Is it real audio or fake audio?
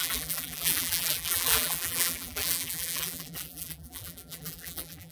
fake